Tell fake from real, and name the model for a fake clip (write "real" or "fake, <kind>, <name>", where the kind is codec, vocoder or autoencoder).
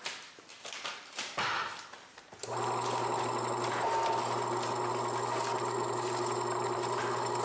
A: real